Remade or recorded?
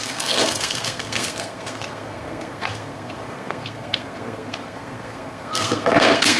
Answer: remade